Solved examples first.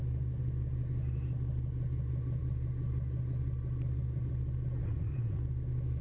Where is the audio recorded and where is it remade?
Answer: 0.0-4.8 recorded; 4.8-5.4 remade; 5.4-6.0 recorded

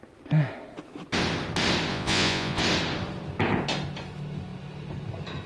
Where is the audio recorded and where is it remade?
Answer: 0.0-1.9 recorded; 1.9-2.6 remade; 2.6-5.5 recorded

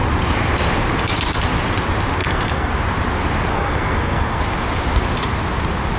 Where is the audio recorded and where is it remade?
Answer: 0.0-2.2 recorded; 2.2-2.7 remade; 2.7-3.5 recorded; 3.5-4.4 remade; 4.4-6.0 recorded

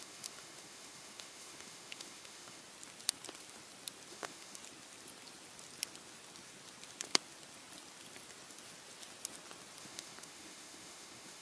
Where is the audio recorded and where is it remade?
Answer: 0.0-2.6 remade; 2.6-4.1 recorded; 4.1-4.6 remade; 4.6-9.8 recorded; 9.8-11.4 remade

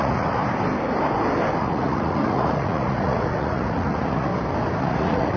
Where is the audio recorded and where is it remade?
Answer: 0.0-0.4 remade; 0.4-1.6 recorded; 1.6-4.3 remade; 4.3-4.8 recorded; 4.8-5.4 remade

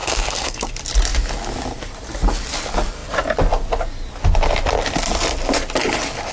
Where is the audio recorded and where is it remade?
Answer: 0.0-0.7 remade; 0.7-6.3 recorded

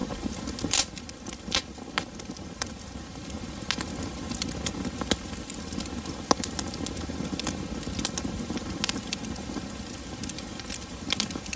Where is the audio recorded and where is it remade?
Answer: 0.0-11.6 recorded

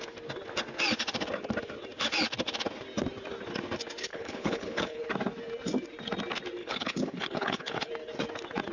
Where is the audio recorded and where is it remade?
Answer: 0.0-4.1 recorded; 4.1-5.0 remade; 5.0-6.6 recorded; 6.6-7.9 remade; 7.9-8.7 recorded